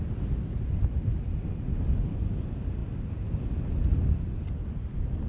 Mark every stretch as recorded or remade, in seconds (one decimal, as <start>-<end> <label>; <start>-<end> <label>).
0.0-5.3 recorded